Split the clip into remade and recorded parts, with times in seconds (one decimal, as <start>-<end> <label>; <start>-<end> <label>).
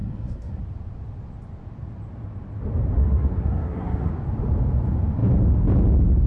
0.0-0.6 remade; 0.6-3.0 recorded; 3.0-4.1 remade; 4.1-6.3 recorded